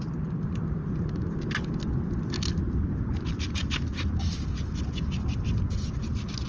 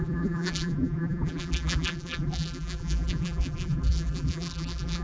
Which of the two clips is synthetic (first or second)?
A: second